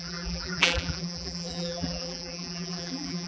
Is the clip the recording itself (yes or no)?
no